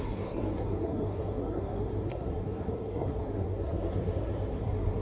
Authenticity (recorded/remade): remade